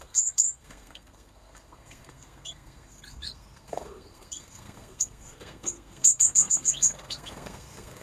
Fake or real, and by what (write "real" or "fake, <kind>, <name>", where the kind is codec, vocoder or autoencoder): fake, codec, SNAC